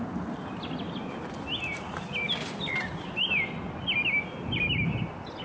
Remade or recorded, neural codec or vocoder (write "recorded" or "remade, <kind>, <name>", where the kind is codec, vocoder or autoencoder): recorded